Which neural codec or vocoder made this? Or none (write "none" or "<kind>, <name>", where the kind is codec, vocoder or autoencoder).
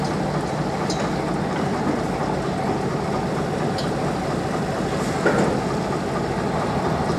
none